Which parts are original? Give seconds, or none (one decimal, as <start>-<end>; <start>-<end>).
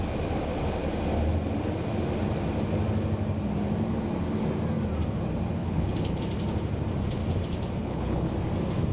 0.0-5.6; 6.2-7.8; 8.3-8.9